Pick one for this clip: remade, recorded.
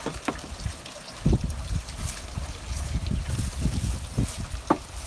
recorded